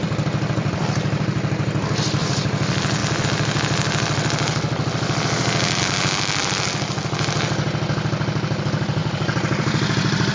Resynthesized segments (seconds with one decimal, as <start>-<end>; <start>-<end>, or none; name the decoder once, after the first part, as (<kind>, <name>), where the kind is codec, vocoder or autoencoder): 0.0-3.0 (vocoder, BigVGAN v2); 5.8-6.4; 8.6-10.3